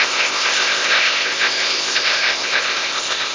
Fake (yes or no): yes